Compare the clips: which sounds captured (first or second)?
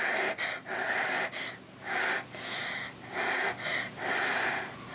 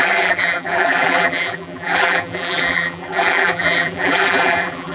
first